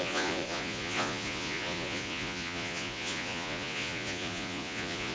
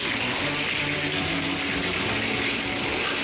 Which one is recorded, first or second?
second